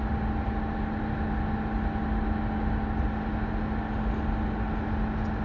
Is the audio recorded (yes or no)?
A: yes